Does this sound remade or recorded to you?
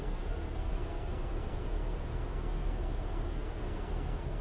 remade